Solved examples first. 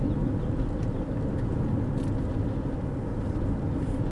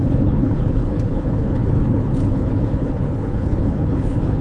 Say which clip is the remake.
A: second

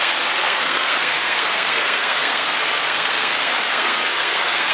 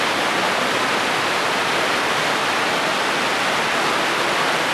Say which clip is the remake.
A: first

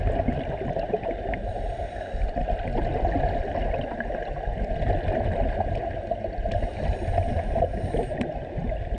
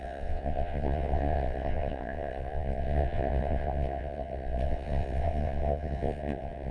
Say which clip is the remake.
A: second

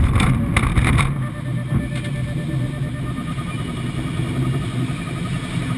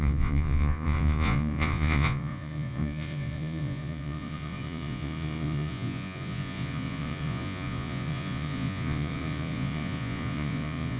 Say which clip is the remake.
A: second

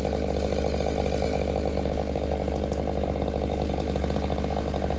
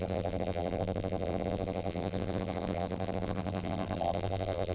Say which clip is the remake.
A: second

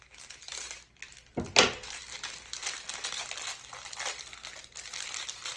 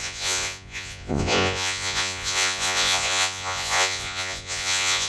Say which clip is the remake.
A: second